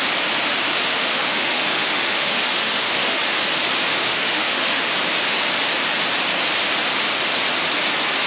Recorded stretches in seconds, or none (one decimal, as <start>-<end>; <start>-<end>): 0.0-0.7; 3.2-3.9; 4.8-8.3